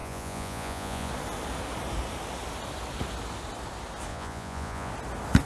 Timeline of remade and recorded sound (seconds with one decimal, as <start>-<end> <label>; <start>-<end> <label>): 0.0-1.1 remade; 1.1-4.1 recorded; 4.1-4.9 remade; 4.9-5.5 recorded